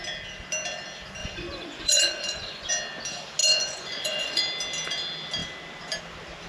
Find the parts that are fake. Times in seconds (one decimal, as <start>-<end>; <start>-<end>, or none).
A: 1.2-2.7; 3.4-4.4

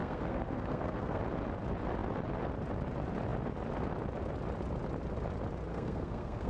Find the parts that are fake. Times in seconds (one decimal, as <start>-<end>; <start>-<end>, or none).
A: 0.0-1.2; 5.7-6.5

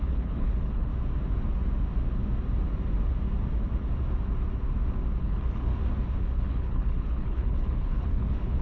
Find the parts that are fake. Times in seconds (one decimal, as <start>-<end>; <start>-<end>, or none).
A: 0.0-0.9; 5.2-5.7; 6.2-8.6

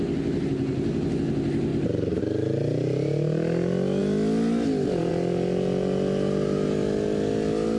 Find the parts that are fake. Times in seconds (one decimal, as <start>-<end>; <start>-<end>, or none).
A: none